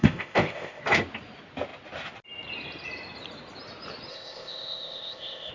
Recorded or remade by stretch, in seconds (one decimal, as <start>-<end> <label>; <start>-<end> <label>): 0.0-0.8 remade; 0.8-4.1 recorded; 4.1-5.5 remade